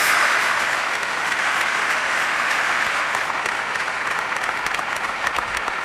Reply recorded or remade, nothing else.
remade